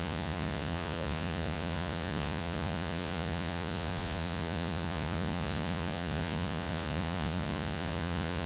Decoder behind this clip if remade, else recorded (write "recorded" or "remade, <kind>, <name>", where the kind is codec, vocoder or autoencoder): remade, vocoder, Vocos